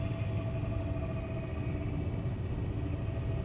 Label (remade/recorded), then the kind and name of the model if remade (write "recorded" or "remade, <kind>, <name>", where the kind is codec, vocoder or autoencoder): recorded